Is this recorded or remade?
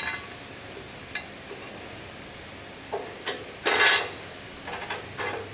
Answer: recorded